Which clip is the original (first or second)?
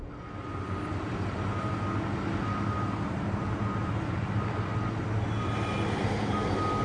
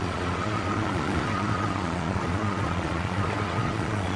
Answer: first